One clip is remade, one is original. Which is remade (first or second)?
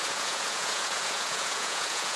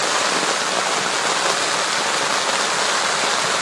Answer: first